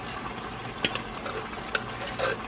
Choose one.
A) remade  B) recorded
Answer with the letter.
B